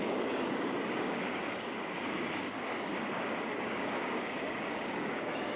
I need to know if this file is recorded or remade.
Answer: remade